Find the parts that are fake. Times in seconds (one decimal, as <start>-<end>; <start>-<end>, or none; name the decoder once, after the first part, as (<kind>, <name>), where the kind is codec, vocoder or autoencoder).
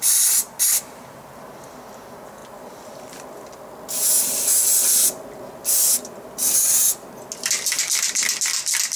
none